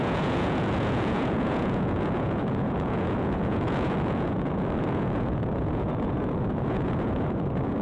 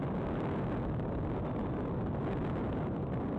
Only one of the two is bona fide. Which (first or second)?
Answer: second